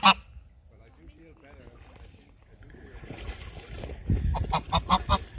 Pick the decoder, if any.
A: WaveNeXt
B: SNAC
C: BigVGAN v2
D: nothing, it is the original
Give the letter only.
D